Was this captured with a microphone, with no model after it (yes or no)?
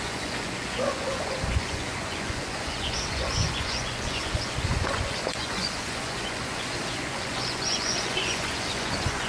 no